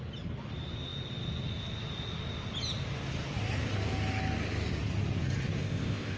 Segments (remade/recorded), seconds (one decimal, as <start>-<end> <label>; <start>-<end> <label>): 0.0-5.6 recorded; 5.6-6.2 remade